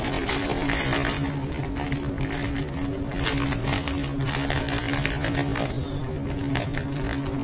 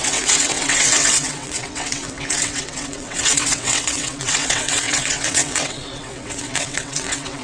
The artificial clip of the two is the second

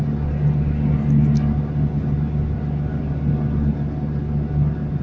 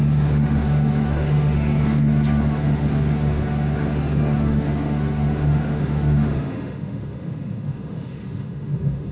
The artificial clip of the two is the second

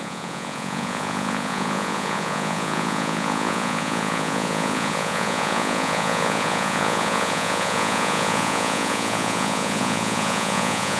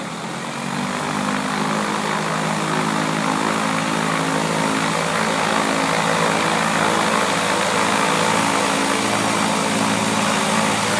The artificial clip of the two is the first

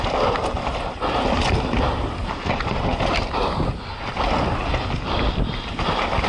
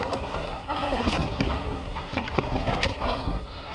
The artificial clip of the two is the second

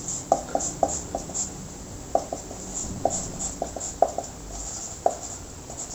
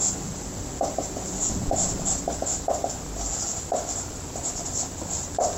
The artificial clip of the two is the second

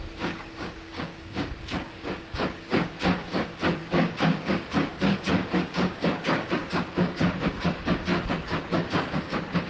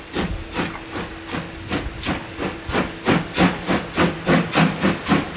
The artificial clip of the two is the first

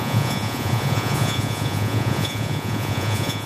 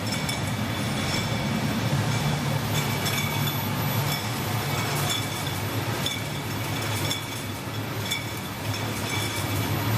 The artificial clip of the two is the first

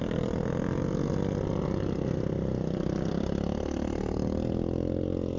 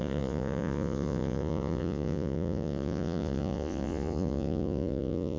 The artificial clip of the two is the second